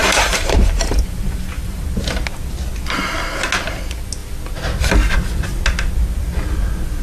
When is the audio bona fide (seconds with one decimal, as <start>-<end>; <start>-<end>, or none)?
1.8-7.0